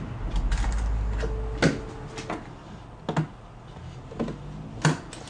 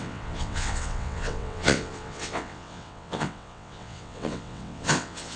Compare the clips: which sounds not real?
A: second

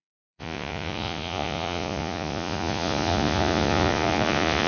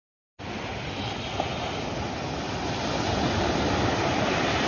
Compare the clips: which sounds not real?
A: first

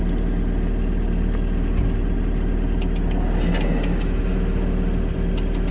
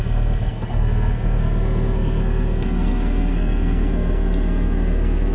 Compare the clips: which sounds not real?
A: second